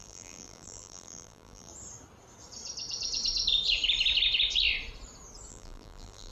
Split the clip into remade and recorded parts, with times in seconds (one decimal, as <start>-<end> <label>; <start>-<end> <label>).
0.0-1.7 remade; 1.7-5.5 recorded; 5.5-6.3 remade